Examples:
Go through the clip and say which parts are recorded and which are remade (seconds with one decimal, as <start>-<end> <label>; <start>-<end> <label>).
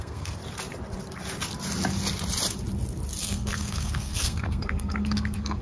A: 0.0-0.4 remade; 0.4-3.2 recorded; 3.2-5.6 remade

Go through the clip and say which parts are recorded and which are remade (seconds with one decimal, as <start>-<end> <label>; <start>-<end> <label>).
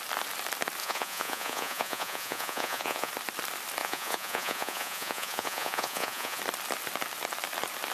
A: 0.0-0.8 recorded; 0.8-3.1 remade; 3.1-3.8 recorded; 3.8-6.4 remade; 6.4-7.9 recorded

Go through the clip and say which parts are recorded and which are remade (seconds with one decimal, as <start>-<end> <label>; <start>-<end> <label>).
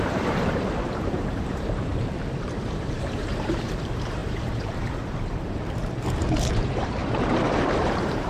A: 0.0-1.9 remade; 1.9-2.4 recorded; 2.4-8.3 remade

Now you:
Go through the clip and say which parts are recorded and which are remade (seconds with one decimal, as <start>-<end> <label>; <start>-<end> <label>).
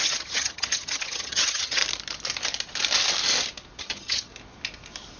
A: 0.0-1.8 remade; 1.8-3.8 recorded; 3.8-4.3 remade; 4.3-5.2 recorded